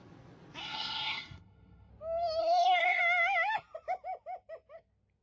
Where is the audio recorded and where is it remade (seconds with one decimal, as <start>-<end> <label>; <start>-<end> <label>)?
0.0-0.6 recorded; 0.6-1.9 remade; 1.9-2.4 recorded; 2.4-3.0 remade; 3.0-5.2 recorded